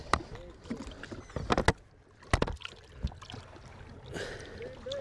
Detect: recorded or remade recorded